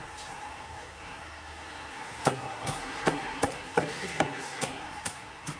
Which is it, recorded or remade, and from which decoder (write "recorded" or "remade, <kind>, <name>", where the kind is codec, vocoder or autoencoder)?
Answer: remade, codec, SNAC